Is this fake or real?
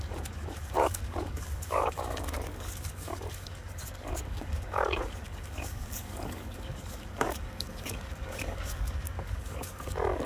fake